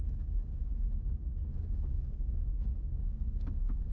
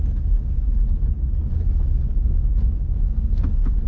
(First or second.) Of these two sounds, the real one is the second